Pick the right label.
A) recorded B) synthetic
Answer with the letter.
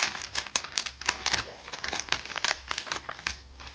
B